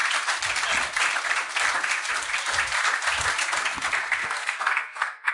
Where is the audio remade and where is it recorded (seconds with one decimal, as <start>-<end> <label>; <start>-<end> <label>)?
0.0-4.2 recorded; 4.2-5.3 remade